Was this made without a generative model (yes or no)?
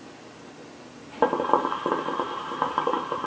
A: yes